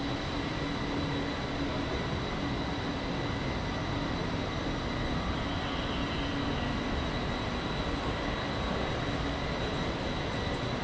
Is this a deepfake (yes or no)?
no